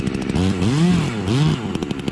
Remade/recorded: recorded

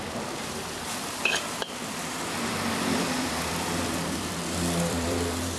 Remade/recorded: remade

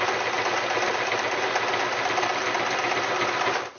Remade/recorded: recorded